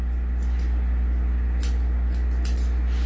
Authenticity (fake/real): real